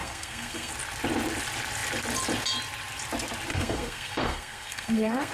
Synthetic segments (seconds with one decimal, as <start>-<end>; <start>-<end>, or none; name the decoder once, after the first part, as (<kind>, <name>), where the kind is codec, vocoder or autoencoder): 0.0-0.7 (codec, SNAC); 3.5-5.3